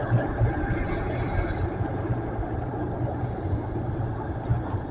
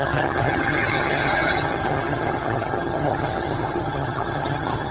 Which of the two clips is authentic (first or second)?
first